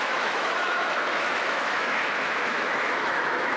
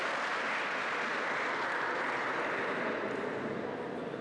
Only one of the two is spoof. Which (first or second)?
first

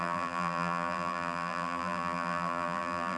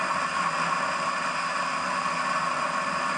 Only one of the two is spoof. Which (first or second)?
first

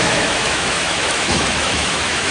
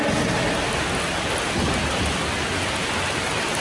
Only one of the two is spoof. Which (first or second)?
first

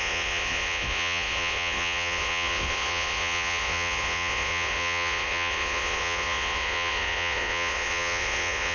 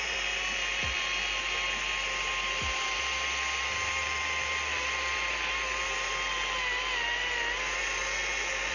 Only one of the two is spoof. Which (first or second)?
first